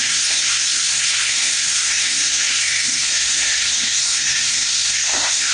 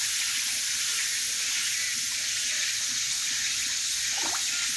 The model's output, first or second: first